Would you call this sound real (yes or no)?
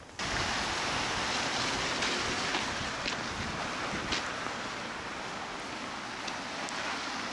yes